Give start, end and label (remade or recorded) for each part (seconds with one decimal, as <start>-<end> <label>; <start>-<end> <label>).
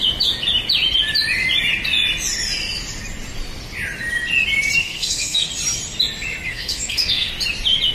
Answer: 0.0-4.8 recorded; 4.8-5.5 remade; 5.5-6.5 recorded; 6.5-7.3 remade; 7.3-7.9 recorded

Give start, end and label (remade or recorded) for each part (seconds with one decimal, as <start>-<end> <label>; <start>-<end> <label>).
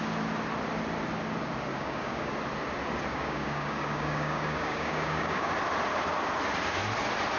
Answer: 0.0-1.7 recorded; 1.7-2.3 remade; 2.3-3.1 recorded; 3.1-5.5 remade; 5.5-7.4 recorded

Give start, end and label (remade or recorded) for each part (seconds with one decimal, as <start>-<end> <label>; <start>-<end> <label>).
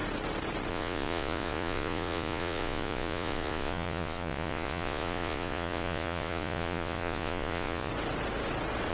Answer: 0.0-0.7 recorded; 0.7-7.9 remade; 7.9-8.9 recorded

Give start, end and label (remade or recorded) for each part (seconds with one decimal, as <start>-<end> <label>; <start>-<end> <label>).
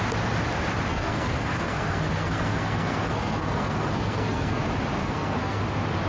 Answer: 0.0-0.9 recorded; 0.9-4.6 remade; 4.6-5.0 recorded; 5.0-5.6 remade; 5.6-6.1 recorded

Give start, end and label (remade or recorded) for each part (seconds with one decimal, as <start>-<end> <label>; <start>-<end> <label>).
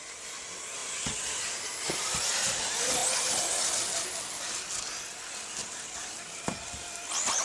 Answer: 0.0-7.4 recorded